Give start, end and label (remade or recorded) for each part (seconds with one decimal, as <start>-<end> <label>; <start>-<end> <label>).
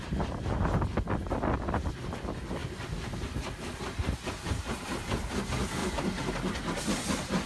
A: 0.0-2.6 recorded; 2.6-3.8 remade; 3.8-5.8 recorded; 5.8-6.3 remade; 6.3-7.5 recorded